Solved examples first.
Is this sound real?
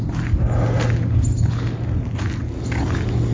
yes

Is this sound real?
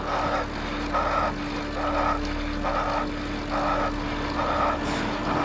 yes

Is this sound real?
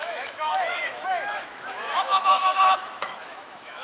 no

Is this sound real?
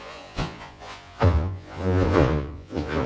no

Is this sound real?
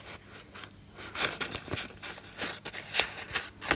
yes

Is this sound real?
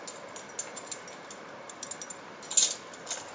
yes